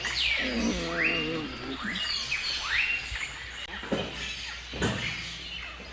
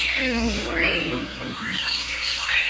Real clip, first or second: first